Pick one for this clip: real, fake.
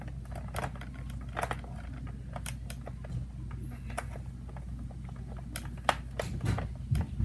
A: real